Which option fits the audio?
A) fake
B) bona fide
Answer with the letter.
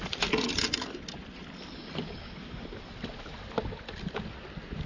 B